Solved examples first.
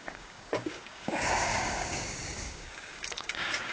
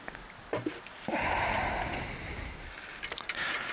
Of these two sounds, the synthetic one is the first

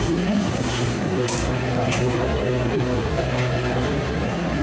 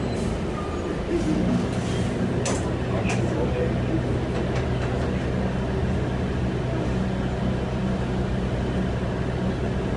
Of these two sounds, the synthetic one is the first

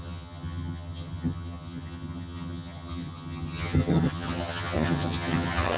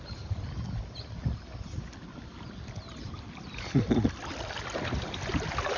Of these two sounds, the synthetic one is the first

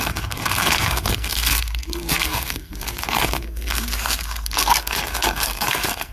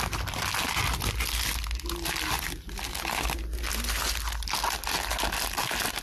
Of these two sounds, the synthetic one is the first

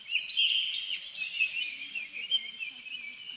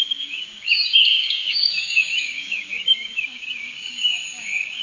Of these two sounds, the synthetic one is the second